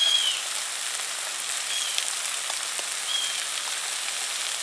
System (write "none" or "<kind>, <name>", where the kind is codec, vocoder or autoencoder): none